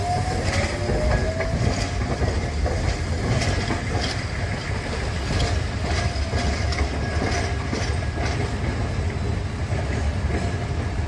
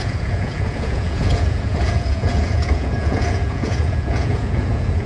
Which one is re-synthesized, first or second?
second